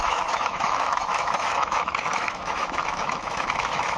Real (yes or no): no